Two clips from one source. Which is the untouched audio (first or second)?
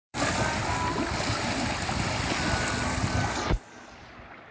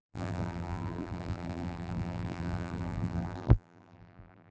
first